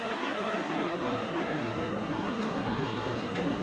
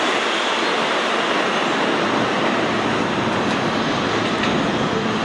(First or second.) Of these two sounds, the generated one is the first